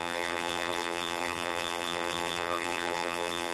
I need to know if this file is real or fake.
fake